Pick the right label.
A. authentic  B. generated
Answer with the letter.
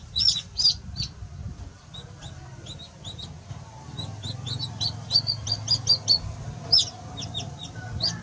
A